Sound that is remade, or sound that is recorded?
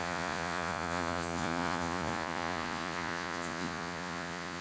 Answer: remade